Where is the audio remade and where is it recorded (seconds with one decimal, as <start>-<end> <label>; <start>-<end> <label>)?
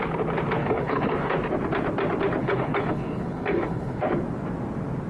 0.0-0.6 recorded; 0.6-1.1 remade; 1.1-2.4 recorded; 2.4-4.0 remade; 4.0-5.1 recorded